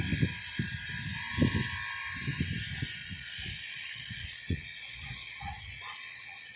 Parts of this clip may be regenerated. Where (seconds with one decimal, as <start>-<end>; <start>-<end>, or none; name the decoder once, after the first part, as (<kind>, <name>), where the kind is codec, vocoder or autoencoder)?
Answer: 3.0-6.6 (vocoder, Vocos)